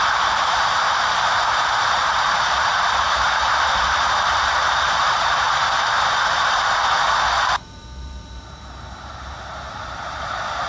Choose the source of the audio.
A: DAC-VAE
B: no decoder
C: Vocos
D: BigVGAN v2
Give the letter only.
D